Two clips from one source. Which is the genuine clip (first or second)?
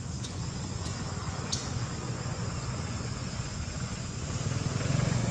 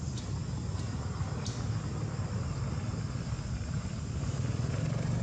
second